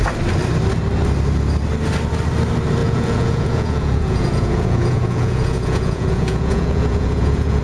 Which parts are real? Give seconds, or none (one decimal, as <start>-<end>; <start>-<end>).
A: 0.0-2.8